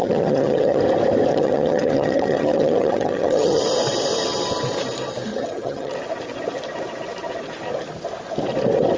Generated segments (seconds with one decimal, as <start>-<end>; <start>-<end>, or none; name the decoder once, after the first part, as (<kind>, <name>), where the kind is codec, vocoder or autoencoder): 0.0-0.8 (vocoder, HiFi-GAN); 1.3-3.6; 5.3-5.9